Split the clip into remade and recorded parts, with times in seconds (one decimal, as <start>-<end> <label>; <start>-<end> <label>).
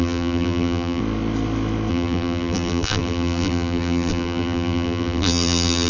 0.0-1.0 remade; 1.0-1.9 recorded; 1.9-5.9 remade